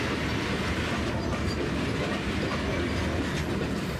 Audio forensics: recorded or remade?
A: recorded